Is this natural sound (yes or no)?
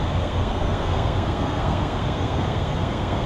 no